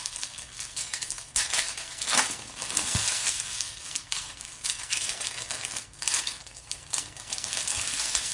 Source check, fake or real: fake